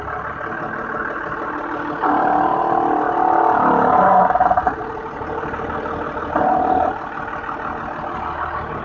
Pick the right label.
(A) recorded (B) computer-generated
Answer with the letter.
A